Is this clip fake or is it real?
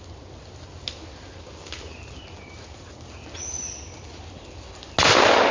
real